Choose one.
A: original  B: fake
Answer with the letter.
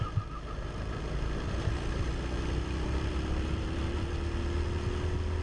A